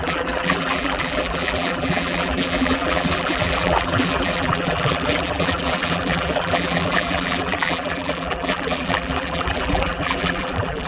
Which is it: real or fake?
fake